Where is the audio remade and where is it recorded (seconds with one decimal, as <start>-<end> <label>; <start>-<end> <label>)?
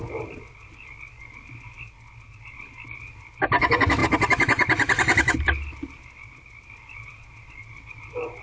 0.0-4.0 recorded; 4.0-8.4 remade